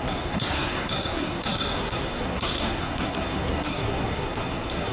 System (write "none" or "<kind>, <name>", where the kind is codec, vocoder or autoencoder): codec, SNAC